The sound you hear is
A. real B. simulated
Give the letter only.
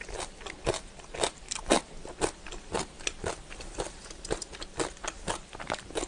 A